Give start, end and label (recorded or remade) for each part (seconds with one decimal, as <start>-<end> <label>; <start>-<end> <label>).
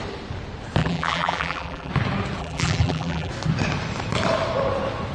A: 0.0-0.8 recorded; 0.8-1.9 remade; 1.9-2.4 recorded; 2.4-3.3 remade; 3.3-5.1 recorded